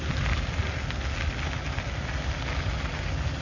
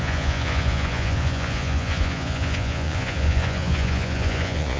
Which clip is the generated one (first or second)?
second